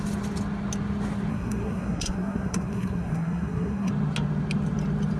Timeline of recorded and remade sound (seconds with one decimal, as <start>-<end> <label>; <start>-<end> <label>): 0.0-1.3 recorded; 1.3-3.9 remade; 3.9-5.2 recorded